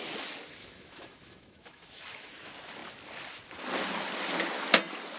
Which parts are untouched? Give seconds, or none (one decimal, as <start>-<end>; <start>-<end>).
0.0-0.6; 2.3-5.2